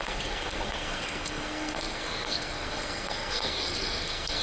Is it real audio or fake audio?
fake